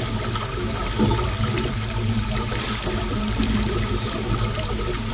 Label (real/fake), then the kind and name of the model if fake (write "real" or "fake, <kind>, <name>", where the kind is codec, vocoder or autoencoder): real